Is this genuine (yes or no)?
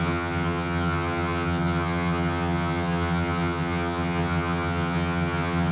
no